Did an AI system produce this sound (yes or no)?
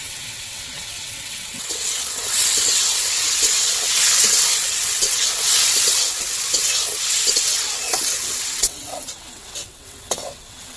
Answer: yes